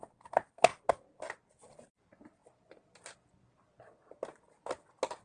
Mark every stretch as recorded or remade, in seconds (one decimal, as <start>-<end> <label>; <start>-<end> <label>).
0.0-5.2 recorded